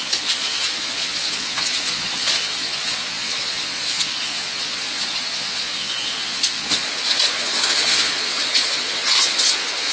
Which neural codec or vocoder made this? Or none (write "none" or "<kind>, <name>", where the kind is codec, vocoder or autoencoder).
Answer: vocoder, Vocos